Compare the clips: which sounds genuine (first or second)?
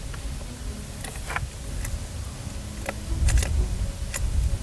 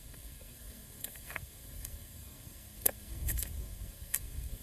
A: first